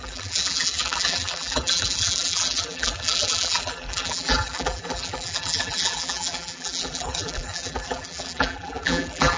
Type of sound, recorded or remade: remade